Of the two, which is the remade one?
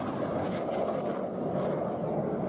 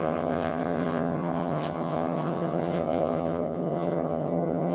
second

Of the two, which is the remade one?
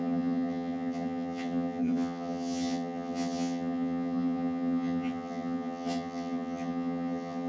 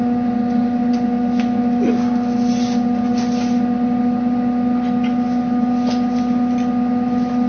first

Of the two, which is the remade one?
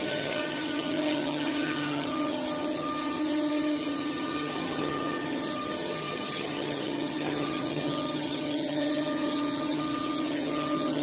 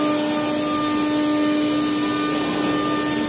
first